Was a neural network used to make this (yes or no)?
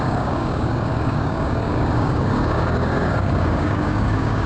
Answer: yes